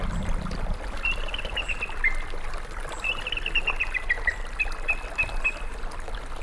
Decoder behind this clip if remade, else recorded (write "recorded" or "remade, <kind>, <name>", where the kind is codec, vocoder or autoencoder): recorded